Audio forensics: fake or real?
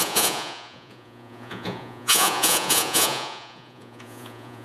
fake